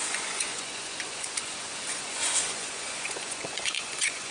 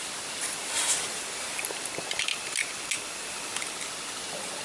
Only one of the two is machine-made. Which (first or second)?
first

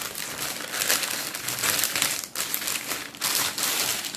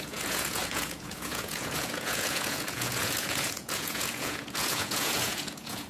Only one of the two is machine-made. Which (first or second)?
second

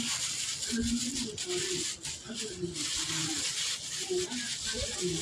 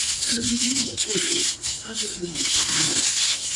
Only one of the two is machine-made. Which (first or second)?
second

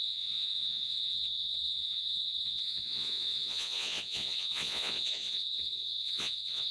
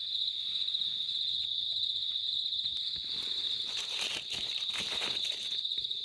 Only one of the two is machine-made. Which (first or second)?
first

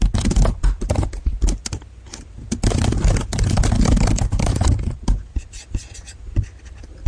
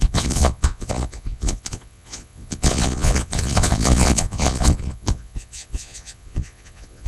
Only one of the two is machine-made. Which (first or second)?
second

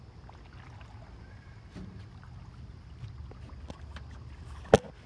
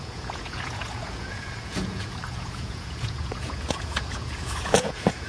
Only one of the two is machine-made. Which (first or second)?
second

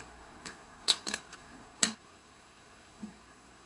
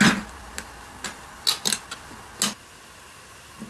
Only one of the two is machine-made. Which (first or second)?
first